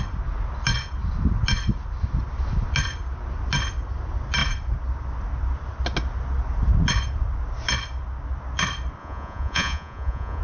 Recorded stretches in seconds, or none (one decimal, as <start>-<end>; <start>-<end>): 0.0-9.0